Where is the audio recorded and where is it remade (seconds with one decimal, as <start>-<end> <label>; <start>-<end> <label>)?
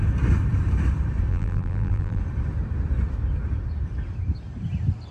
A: 0.0-1.3 recorded; 1.3-2.2 remade; 2.2-5.1 recorded